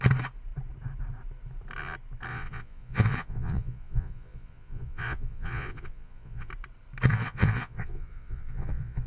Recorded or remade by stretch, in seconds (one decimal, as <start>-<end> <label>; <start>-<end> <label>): 0.0-2.3 recorded; 2.3-6.5 remade; 6.5-7.1 recorded; 7.1-9.1 remade